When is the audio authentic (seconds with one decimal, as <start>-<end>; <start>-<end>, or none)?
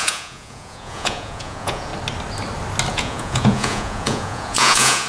1.9-2.9